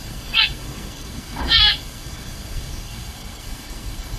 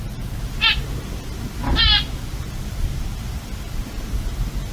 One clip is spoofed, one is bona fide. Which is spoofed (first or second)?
first